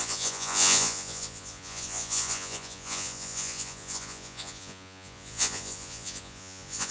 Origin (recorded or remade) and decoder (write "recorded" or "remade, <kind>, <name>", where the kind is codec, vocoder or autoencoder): remade, vocoder, Vocos